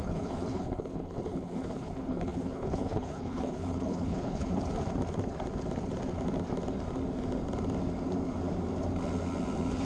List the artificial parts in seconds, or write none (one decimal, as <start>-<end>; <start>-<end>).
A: 0.0-4.5